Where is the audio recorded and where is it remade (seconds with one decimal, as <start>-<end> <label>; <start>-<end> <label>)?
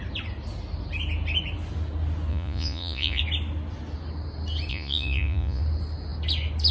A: 0.0-2.3 recorded; 2.3-3.2 remade; 3.2-4.7 recorded; 4.7-5.6 remade; 5.6-6.7 recorded